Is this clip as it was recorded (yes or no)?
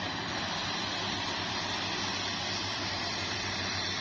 no